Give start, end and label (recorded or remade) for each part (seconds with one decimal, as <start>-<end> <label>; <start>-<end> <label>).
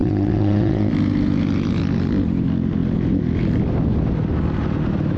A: 0.0-0.9 remade; 0.9-5.2 recorded